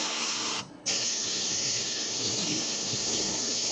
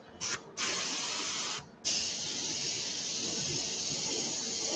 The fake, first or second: first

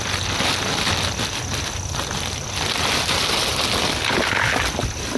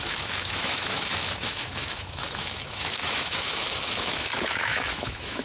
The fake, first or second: second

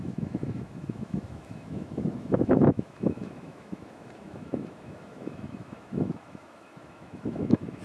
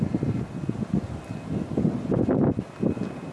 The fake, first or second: first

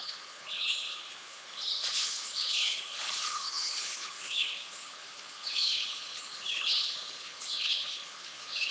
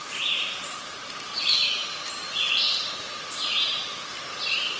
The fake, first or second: first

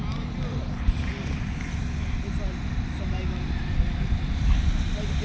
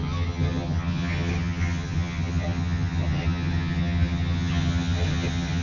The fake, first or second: second